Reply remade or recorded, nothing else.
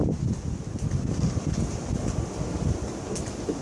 recorded